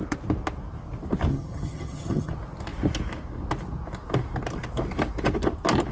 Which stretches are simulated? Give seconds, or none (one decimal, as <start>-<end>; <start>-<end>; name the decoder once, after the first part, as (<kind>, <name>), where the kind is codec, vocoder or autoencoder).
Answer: 1.3-2.3 (vocoder, HiFi-GAN)

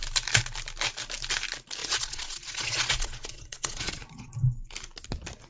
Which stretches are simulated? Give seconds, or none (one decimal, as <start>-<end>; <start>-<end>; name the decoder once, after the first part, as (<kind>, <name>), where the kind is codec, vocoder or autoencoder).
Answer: 1.8-4.3 (vocoder, Vocos)

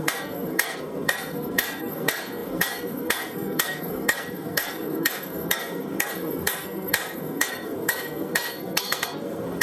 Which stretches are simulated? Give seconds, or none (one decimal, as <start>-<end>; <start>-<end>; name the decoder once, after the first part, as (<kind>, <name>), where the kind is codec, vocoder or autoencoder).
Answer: 0.0-9.6 (codec, SNAC)

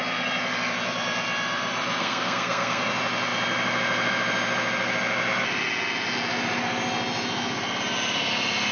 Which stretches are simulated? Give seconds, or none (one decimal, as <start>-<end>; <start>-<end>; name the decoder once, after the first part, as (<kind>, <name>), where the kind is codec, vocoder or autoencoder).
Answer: 2.0-2.8 (codec, SNAC)

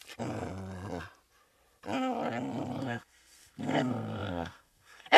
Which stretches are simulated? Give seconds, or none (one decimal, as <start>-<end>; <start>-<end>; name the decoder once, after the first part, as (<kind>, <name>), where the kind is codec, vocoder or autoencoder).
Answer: 2.8-5.2 (codec, SNAC)

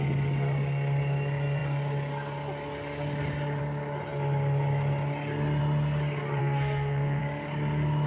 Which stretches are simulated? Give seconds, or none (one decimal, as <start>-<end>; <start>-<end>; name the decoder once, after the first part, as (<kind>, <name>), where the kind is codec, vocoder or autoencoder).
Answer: 6.4-7.2 (codec, SNAC)

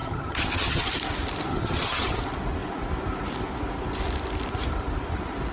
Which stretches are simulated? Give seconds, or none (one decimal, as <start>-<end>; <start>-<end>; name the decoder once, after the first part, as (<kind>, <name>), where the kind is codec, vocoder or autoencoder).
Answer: 0.0-0.9 (vocoder, HiFi-GAN); 1.5-2.2

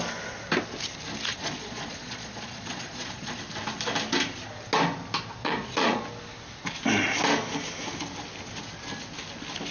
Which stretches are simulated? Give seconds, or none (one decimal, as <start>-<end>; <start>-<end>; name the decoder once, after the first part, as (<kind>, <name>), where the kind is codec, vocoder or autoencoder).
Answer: 1.3-3.4 (vocoder, Vocos); 5.4-6.0